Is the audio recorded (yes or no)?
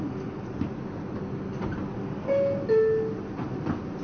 yes